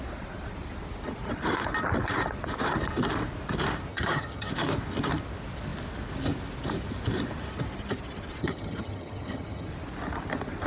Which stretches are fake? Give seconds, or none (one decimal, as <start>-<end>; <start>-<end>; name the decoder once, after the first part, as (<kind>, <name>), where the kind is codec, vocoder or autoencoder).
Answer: 3.9-4.5 (vocoder, HiFi-GAN); 8.4-9.7